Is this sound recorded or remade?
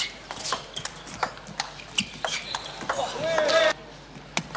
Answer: recorded